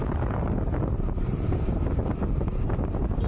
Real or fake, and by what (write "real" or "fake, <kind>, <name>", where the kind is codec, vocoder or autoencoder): real